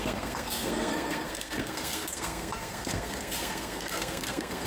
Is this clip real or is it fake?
fake